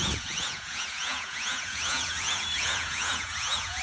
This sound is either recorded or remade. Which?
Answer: remade